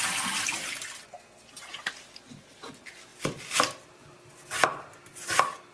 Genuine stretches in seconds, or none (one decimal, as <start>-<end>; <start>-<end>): 0.0-3.1; 3.8-4.4; 5.3-5.7